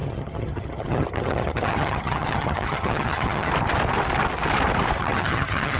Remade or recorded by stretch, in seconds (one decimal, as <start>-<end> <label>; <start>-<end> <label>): 0.0-3.5 remade; 3.5-5.0 recorded; 5.0-5.8 remade